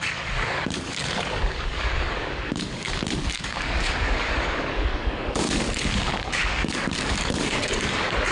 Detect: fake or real fake